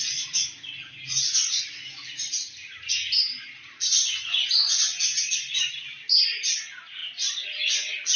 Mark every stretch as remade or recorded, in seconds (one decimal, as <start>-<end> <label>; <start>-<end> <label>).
0.0-8.2 recorded

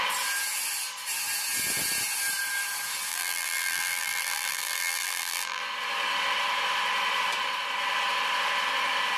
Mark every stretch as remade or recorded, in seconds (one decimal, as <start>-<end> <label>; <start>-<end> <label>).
0.0-3.1 recorded; 3.1-5.6 remade; 5.6-9.2 recorded

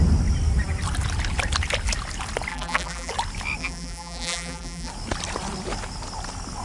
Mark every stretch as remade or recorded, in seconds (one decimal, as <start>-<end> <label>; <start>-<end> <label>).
0.0-2.5 recorded; 2.5-3.1 remade; 3.1-3.6 recorded; 3.6-4.9 remade; 4.9-6.6 recorded

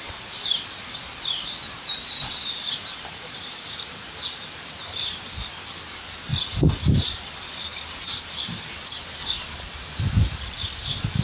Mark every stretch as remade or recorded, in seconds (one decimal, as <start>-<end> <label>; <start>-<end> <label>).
0.0-6.3 remade; 6.3-7.1 recorded; 7.1-11.2 remade

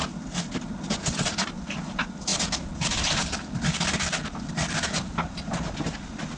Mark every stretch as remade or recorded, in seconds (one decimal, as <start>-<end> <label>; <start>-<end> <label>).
0.0-2.3 recorded; 2.3-5.7 remade; 5.7-6.4 recorded